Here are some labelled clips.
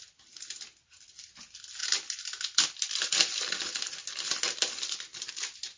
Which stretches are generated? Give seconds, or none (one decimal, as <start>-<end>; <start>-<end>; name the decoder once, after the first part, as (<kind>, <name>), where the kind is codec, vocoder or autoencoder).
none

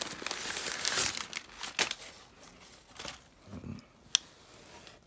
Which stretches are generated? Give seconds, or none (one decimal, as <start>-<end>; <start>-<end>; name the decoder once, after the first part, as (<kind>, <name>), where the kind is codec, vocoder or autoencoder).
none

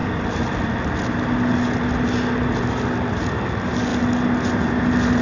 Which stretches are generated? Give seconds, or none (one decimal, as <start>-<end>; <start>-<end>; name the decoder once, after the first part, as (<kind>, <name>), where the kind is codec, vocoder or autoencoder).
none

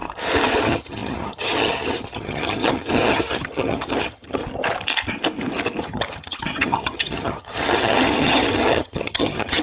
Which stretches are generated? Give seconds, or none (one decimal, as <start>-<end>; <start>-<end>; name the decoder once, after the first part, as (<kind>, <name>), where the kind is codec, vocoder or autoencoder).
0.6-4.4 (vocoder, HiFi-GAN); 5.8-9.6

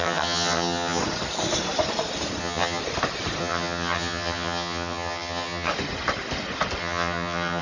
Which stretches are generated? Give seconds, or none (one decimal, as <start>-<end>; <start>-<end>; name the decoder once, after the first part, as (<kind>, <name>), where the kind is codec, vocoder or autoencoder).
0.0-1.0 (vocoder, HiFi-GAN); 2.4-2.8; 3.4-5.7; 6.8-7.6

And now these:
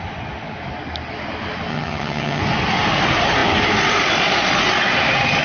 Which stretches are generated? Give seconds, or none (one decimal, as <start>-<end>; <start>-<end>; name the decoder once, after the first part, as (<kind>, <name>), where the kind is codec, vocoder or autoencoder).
1.7-2.4 (vocoder, HiFi-GAN)